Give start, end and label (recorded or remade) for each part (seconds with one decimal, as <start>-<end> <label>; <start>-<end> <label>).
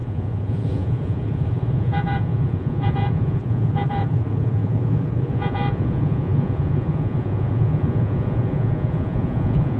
0.0-9.8 remade